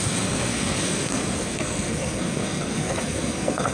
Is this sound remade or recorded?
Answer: remade